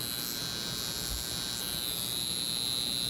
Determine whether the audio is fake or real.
real